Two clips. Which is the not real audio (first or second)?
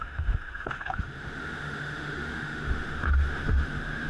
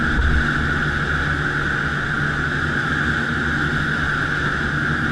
first